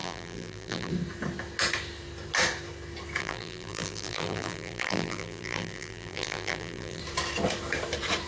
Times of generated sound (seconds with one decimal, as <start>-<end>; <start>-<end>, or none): 0.0-0.9; 3.2-7.0